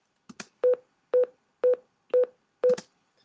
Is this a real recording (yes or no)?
yes